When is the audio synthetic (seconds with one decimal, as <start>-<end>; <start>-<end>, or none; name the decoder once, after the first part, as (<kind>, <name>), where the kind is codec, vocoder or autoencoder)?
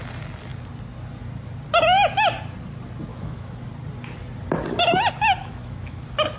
3.1-3.6 (autoencoder, DAC-VAE); 5.4-6.0